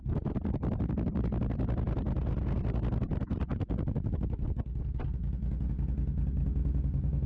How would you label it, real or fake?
real